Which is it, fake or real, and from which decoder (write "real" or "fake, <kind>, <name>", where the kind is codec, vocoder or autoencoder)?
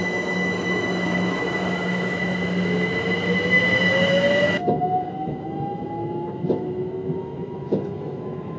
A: fake, autoencoder, DAC-VAE